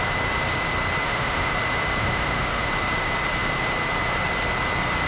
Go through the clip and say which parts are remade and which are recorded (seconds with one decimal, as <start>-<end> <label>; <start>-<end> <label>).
0.0-1.0 recorded; 1.0-1.5 remade; 1.5-2.0 recorded; 2.0-2.7 remade; 2.7-5.1 recorded